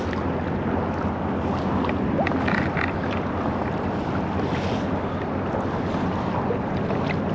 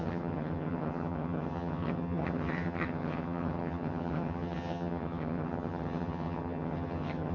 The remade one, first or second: second